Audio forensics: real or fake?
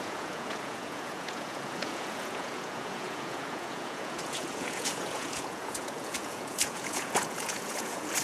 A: fake